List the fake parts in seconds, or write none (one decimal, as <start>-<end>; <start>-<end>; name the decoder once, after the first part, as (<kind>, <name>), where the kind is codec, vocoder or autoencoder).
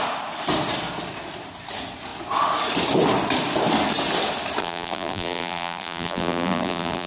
4.6-7.1 (vocoder, BigVGAN v2)